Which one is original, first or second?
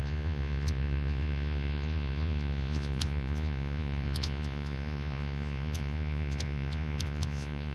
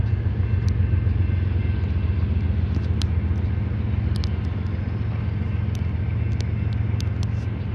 second